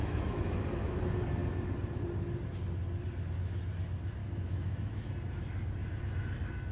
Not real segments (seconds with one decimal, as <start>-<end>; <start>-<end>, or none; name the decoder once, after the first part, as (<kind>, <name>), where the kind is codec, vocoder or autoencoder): 0.0-1.0 (autoencoder, DAC-VAE); 4.2-5.1